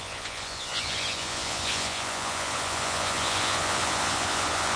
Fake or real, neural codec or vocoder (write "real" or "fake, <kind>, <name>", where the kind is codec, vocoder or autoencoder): fake, vocoder, Vocos